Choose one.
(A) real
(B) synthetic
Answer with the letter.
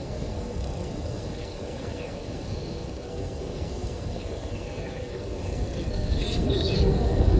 B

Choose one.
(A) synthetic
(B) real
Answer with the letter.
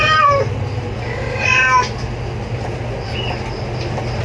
B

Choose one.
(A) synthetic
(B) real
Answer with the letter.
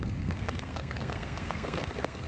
A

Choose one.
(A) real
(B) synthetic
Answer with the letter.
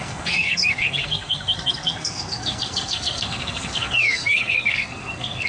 B